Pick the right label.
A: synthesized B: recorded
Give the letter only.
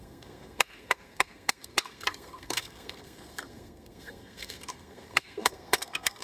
A